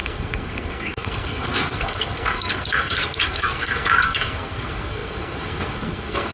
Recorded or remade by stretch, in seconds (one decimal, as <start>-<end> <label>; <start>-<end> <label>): 0.0-6.3 remade